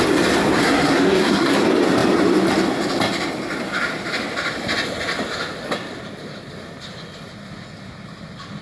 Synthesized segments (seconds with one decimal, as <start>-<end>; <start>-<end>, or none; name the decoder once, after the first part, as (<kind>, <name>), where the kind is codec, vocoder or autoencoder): 0.6-1.6 (codec, SNAC)